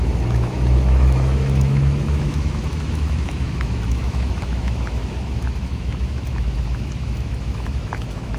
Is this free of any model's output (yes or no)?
no